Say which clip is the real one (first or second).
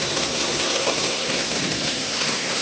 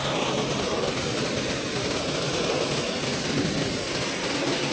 second